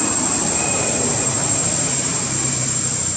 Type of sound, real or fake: fake